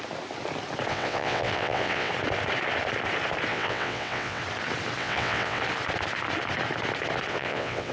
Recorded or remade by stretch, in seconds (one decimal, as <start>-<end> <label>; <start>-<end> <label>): 0.0-0.9 recorded; 0.9-2.1 remade; 2.1-3.5 recorded; 3.5-4.4 remade; 4.4-5.0 recorded; 5.0-5.6 remade; 5.6-7.3 recorded; 7.3-7.9 remade